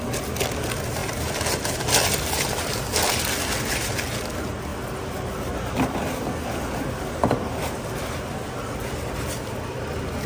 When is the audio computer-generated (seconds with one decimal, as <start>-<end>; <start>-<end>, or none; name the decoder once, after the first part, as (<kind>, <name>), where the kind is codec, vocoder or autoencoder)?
none